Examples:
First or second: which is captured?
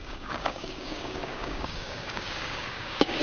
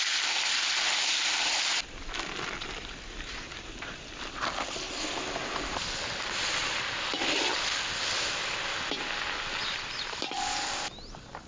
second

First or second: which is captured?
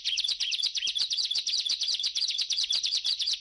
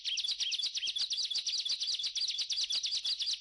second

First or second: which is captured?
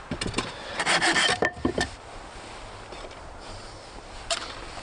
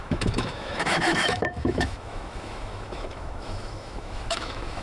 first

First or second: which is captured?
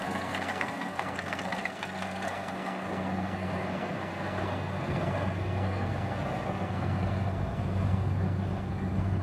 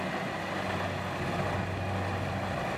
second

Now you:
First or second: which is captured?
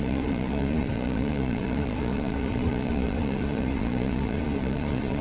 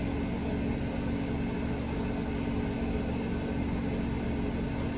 second